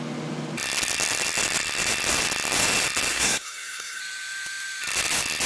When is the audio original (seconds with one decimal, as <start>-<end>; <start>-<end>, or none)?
0.0-3.1; 4.0-5.5